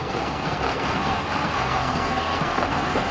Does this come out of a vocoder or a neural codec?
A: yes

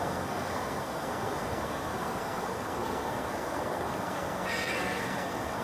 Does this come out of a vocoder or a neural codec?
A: yes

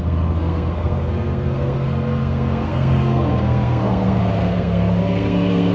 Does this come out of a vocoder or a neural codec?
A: yes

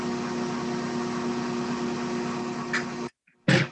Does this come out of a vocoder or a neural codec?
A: no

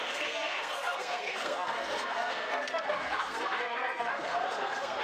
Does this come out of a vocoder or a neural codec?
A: yes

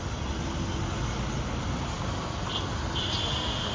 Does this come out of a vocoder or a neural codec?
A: no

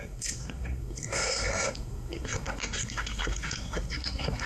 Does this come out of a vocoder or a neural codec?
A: yes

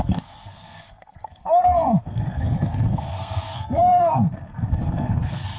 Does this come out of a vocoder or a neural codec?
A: yes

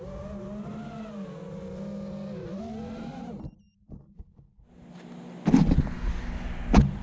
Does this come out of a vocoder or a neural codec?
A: no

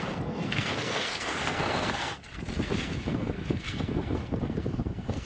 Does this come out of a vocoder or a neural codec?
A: yes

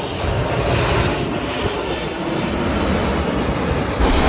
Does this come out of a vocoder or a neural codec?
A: no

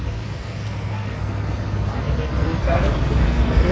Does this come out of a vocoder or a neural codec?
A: yes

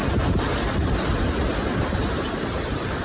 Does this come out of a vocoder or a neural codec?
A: no